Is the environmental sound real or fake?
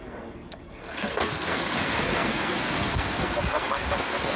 fake